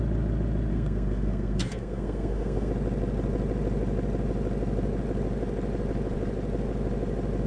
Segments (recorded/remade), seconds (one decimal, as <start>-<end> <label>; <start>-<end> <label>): 0.0-0.7 recorded; 0.7-2.7 remade; 2.7-7.5 recorded